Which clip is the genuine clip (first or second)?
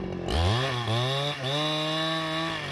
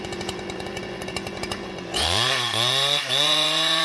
first